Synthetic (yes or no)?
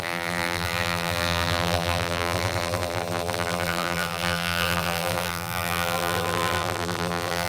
yes